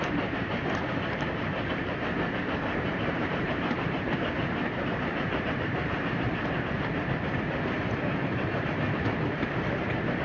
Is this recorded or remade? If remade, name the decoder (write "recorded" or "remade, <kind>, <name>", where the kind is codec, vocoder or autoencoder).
remade, vocoder, BigVGAN v2